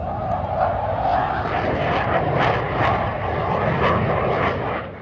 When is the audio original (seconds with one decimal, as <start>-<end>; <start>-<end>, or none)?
0.0-5.0